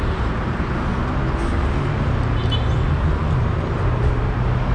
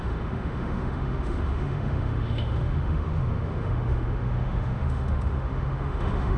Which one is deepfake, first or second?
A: second